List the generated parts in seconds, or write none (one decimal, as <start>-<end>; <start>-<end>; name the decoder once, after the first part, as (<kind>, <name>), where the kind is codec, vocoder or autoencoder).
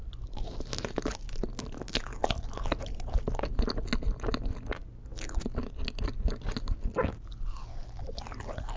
none